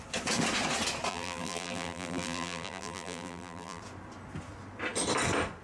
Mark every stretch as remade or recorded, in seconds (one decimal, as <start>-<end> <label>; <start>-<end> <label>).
0.0-1.1 recorded; 1.1-3.8 remade; 3.8-5.6 recorded